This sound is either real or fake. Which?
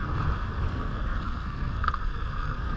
fake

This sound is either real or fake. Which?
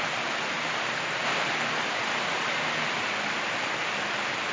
real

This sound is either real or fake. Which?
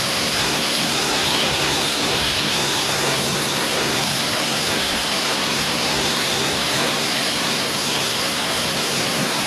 fake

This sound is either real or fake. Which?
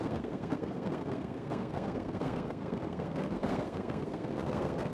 fake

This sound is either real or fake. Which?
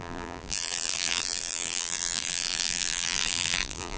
fake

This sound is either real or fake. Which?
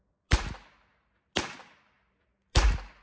real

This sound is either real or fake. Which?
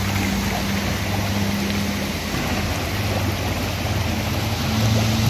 real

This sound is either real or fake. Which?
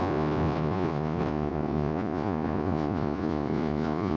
fake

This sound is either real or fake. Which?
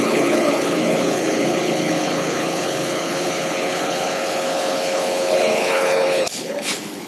fake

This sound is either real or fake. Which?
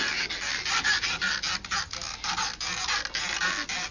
real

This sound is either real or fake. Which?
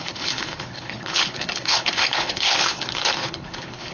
fake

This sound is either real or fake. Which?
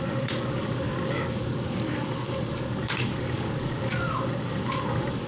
fake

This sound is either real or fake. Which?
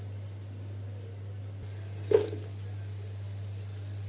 real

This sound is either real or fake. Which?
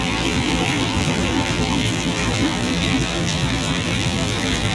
fake